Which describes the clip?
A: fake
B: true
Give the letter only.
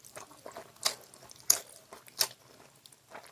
B